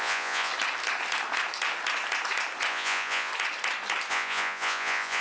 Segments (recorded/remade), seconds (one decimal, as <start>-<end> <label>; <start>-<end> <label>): 0.0-0.5 remade; 0.5-2.7 recorded; 2.7-3.3 remade; 3.3-4.1 recorded; 4.1-5.2 remade